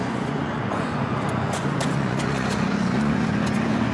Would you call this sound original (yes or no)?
no